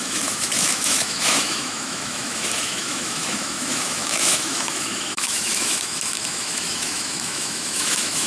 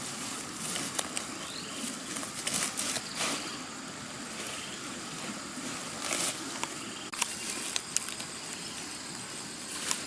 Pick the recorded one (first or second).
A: second